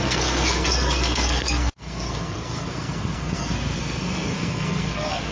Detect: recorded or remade remade